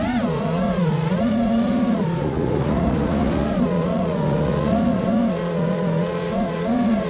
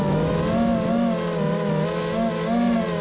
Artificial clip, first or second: first